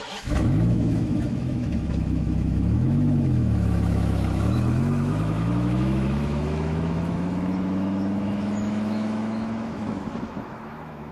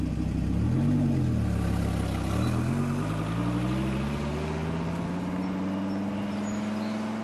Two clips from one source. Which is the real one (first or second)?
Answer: second